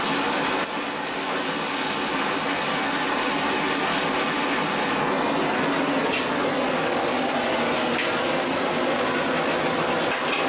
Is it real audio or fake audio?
real